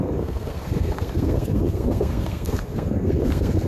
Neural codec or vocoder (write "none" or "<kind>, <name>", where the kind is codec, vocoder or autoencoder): codec, SNAC